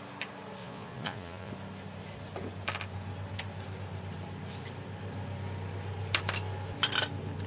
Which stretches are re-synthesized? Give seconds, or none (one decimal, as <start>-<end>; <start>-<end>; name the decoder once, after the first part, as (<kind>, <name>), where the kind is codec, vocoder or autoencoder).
0.6-1.5 (vocoder, Vocos)